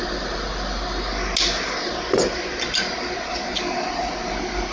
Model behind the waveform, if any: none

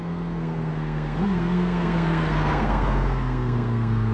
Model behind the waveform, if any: codec, SNAC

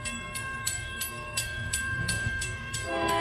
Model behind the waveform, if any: codec, SNAC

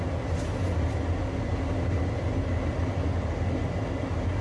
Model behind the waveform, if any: none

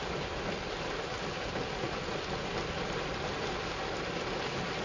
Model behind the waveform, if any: none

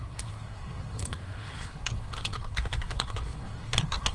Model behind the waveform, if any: codec, SNAC